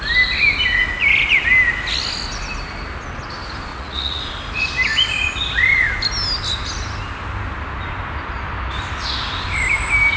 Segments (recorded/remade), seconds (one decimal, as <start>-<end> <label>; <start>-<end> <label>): 0.0-3.7 recorded; 3.7-4.2 remade; 4.2-10.2 recorded